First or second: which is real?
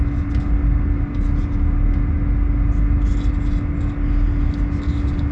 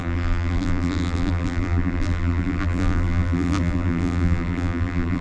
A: first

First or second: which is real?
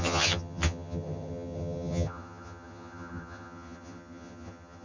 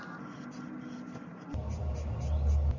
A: second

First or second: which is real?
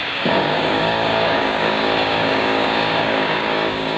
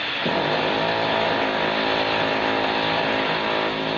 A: second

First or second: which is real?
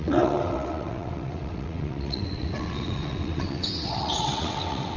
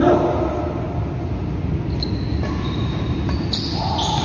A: second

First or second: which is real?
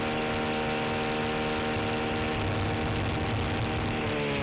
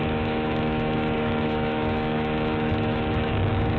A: first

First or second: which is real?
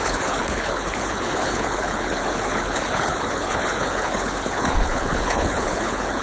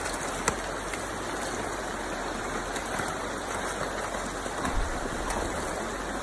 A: second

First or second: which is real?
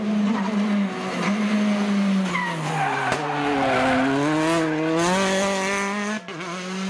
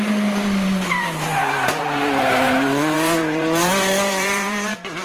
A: first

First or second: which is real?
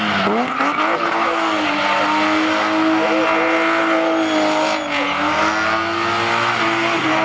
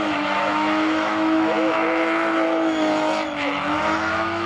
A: first